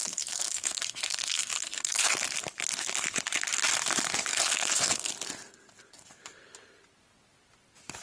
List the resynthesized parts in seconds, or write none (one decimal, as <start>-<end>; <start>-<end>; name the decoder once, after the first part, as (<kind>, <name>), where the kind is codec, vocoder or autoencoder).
0.0-2.1 (codec, SNAC); 4.3-5.1